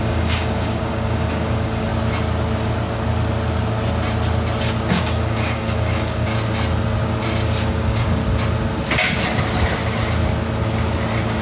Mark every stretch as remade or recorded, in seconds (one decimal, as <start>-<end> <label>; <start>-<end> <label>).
0.0-1.9 remade; 1.9-4.9 recorded; 4.9-6.3 remade; 6.3-7.7 recorded; 7.7-8.2 remade; 8.2-11.4 recorded